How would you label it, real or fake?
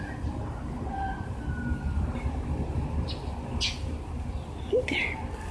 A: real